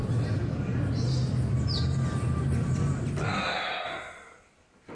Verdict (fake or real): real